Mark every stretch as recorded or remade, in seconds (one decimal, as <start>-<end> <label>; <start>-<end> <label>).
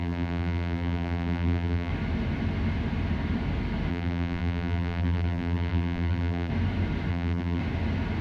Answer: 0.0-1.9 remade; 1.9-3.9 recorded; 3.9-6.5 remade; 6.5-7.1 recorded; 7.1-7.6 remade; 7.6-8.2 recorded